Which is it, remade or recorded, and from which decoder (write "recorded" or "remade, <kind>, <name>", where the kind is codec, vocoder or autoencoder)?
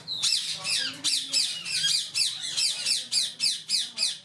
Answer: recorded